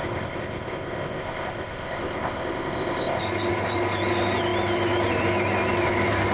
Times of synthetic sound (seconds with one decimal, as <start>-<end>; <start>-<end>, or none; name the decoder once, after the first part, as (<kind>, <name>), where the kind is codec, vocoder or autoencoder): 0.0-3.2 (codec, ZipCodec)